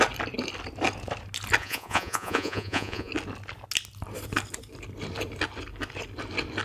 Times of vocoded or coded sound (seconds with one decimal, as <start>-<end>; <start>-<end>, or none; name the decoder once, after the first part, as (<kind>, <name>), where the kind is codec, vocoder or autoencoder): 1.6-3.1 (vocoder, Vocos)